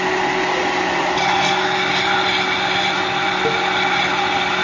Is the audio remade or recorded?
recorded